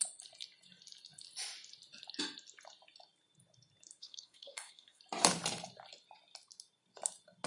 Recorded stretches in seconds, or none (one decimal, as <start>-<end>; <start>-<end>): 0.0-4.0; 5.0-7.5

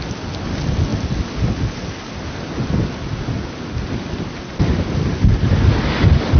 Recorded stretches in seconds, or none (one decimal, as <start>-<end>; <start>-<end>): 0.0-6.4